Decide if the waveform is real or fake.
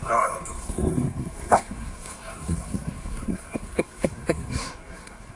fake